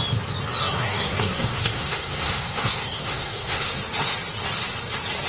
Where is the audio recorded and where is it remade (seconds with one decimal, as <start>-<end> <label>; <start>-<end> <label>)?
0.0-0.6 recorded; 0.6-3.8 remade; 3.8-5.3 recorded